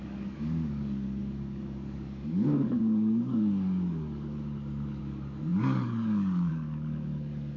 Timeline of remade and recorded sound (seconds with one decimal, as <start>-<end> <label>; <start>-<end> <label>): 0.0-7.6 remade